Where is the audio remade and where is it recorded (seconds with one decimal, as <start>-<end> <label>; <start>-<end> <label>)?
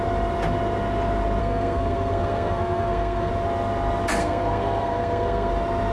0.0-1.4 recorded; 1.4-3.3 remade; 3.3-4.2 recorded; 4.2-5.5 remade; 5.5-5.9 recorded